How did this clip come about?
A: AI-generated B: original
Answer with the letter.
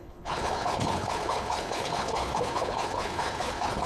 A